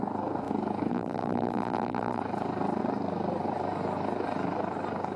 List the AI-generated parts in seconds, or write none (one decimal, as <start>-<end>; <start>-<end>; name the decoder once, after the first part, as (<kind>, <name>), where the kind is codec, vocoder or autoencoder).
0.9-2.2 (vocoder, BigVGAN v2)